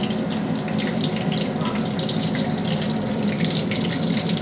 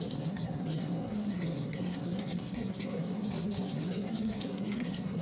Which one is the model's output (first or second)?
second